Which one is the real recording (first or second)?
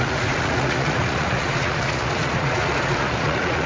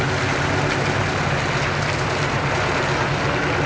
second